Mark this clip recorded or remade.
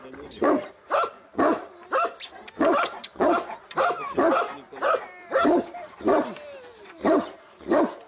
recorded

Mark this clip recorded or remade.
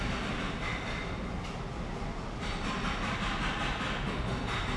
recorded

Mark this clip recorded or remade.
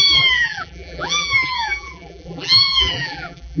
remade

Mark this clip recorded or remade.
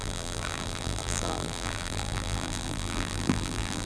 remade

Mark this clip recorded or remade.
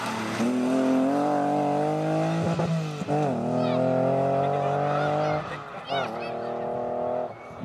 recorded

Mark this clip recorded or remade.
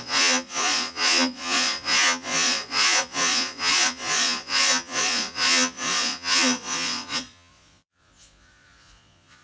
remade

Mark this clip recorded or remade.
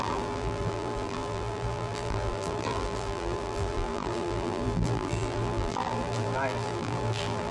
remade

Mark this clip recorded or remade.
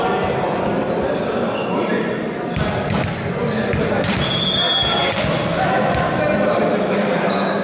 recorded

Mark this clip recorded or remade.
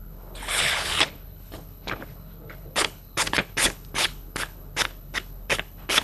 remade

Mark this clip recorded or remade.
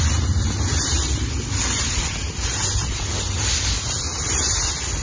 recorded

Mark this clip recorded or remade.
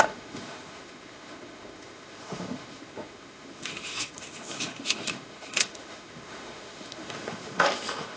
remade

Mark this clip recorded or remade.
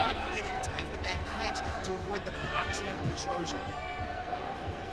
remade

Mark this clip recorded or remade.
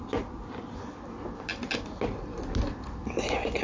recorded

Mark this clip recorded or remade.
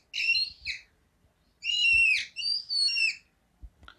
recorded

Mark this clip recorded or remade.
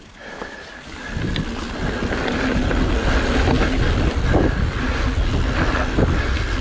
recorded